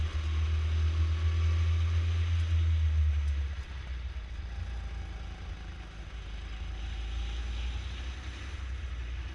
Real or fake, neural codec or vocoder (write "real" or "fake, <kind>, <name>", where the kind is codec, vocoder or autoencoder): real